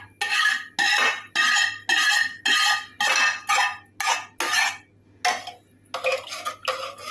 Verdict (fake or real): real